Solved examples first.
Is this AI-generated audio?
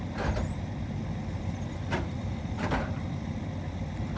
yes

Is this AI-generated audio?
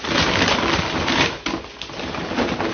no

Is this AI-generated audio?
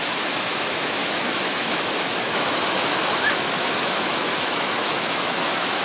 yes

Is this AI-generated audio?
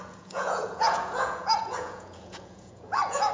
yes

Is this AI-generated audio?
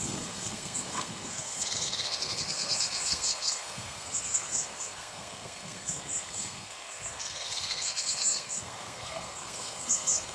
yes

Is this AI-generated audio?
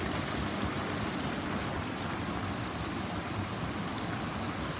no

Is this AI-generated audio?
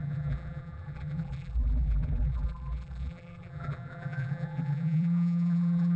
yes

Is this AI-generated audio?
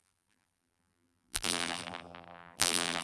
yes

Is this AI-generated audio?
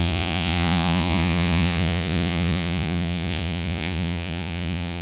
yes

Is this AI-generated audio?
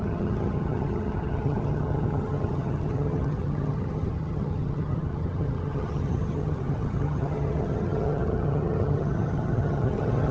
yes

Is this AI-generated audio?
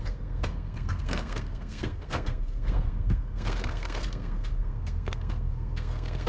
yes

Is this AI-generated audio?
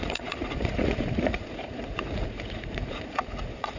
yes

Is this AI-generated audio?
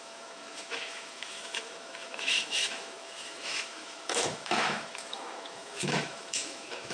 yes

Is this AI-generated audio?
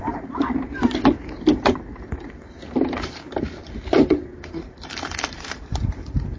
yes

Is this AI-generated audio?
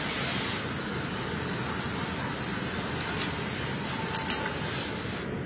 no